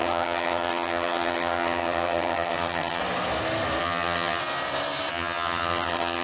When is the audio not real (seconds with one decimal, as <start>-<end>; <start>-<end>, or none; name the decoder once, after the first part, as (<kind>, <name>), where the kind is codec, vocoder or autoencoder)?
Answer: 0.0-3.0 (vocoder, HiFi-GAN); 3.8-4.4; 5.1-6.2